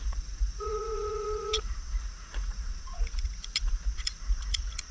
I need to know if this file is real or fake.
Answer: fake